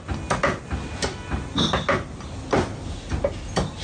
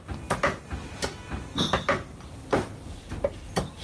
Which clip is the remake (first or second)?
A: second